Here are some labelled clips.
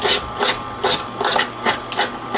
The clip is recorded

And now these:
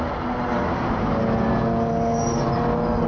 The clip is recorded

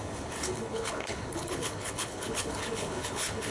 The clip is remade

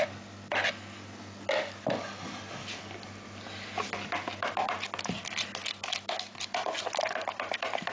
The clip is recorded